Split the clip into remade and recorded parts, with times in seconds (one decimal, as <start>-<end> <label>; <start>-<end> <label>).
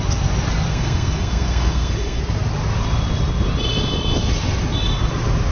0.0-0.7 recorded; 0.7-2.2 remade; 2.2-5.5 recorded